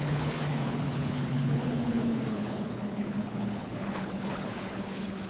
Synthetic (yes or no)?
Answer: yes